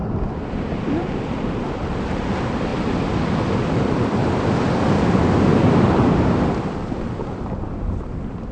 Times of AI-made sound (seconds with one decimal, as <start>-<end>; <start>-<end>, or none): 0.0-4.2; 4.8-8.5